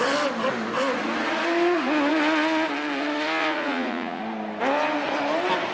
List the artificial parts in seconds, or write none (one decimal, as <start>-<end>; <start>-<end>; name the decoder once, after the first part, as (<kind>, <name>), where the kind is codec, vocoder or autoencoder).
3.4-4.2 (vocoder, Vocos)